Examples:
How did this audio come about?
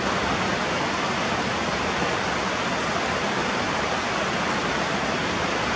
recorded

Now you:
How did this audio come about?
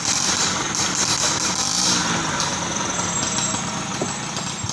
recorded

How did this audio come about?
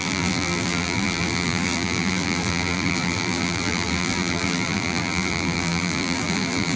remade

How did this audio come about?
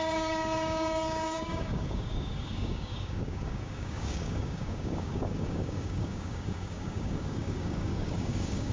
remade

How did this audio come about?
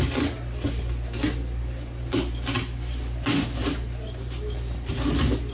recorded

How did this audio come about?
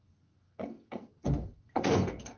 remade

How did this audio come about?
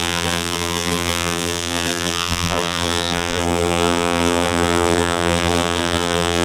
remade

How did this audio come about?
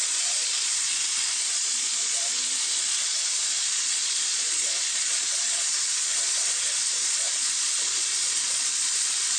remade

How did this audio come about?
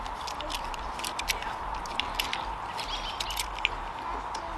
recorded